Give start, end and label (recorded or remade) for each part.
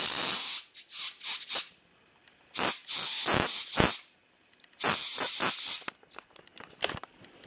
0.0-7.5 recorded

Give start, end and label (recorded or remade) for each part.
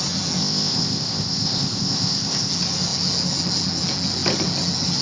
0.0-0.4 recorded; 0.4-2.5 remade; 2.5-5.0 recorded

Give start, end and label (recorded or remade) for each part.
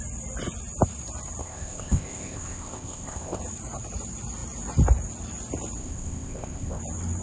0.0-1.4 recorded; 1.4-3.4 remade; 3.4-5.8 recorded; 5.8-6.8 remade; 6.8-7.2 recorded